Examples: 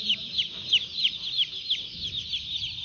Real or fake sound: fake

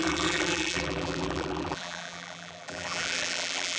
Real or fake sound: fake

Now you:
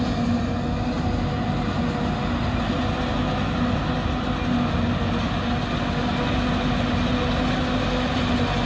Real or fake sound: real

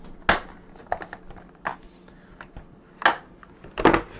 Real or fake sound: real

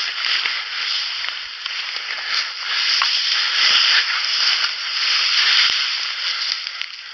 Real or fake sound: real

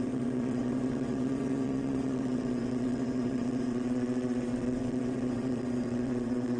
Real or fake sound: fake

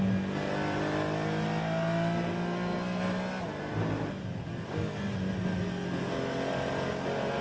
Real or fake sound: real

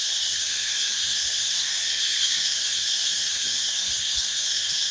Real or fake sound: fake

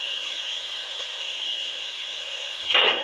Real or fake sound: fake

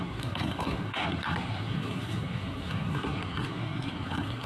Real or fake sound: fake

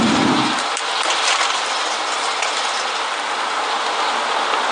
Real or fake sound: real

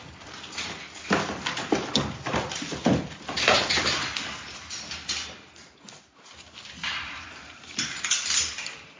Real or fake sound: fake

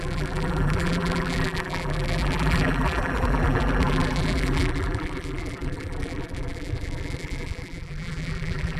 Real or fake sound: fake